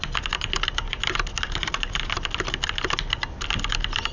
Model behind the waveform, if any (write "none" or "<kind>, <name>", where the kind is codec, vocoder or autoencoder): none